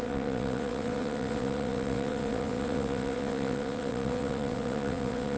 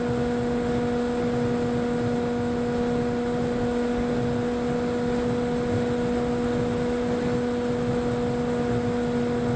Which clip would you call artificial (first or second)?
first